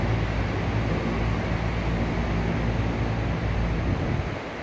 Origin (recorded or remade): recorded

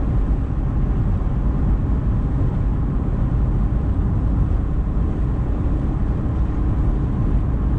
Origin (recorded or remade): recorded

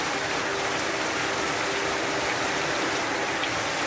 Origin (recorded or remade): recorded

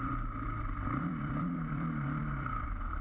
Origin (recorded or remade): remade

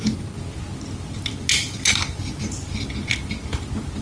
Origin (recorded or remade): recorded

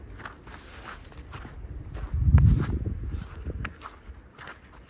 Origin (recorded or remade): recorded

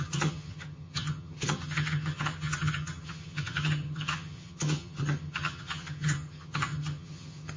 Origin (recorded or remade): remade